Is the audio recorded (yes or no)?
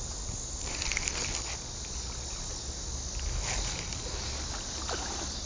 yes